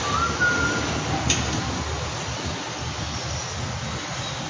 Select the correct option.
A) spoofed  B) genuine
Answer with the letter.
B